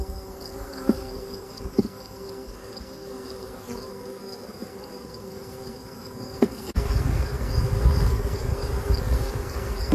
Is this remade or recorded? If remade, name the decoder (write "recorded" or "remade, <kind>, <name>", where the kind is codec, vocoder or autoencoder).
remade, codec, SNAC